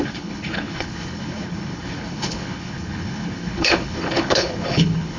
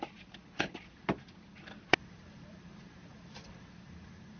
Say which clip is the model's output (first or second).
first